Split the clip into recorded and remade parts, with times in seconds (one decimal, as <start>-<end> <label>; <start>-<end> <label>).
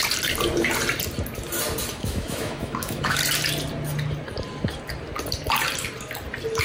0.0-1.9 recorded; 1.9-3.2 remade; 3.2-6.6 recorded